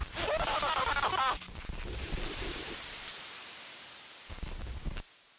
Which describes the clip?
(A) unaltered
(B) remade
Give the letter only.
A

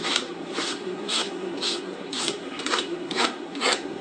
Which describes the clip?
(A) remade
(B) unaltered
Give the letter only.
A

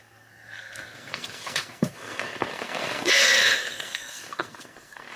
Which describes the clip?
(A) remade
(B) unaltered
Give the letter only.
A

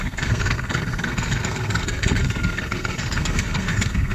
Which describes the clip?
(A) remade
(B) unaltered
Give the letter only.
A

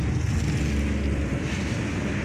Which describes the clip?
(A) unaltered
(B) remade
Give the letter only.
A